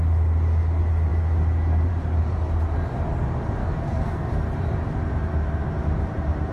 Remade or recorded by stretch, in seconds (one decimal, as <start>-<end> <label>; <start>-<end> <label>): 0.0-3.6 recorded; 3.6-4.3 remade; 4.3-6.5 recorded